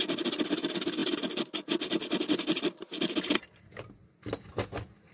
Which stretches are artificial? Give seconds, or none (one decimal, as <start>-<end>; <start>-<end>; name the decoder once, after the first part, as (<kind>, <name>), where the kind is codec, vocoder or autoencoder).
none